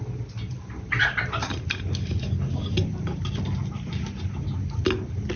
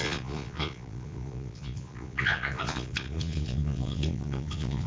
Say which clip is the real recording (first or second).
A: first